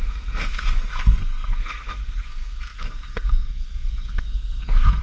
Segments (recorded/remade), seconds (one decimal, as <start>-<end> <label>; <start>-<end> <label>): 0.0-5.0 remade